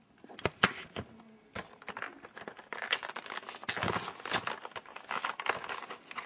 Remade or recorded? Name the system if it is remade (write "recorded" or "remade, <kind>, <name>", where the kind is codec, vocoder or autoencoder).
recorded